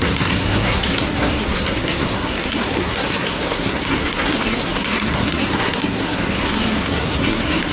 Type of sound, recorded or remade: remade